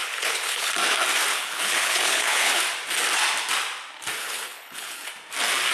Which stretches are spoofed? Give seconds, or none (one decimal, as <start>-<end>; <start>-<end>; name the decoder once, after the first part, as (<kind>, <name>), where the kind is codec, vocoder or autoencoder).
0.0-0.7 (codec, HILCodec); 1.3-2.6; 4.2-5.1